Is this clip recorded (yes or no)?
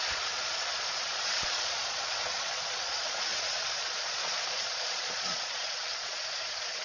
no